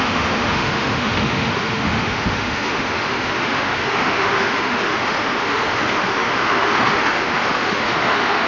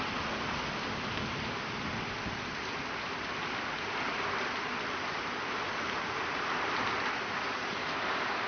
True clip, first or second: second